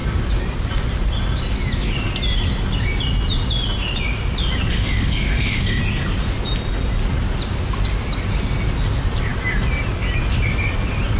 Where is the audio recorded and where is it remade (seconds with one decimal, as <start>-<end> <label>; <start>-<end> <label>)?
0.0-4.7 recorded; 4.7-5.8 remade; 5.8-11.2 recorded